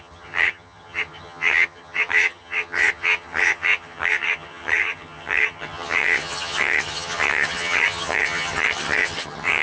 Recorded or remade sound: remade